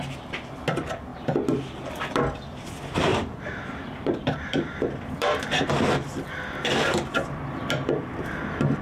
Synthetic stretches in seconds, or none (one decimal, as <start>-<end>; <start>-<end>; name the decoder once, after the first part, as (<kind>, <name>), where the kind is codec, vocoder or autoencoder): 3.1-5.7 (vocoder, BigVGAN v2)